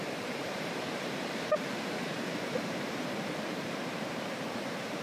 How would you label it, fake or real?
fake